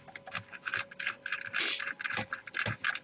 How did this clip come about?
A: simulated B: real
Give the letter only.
B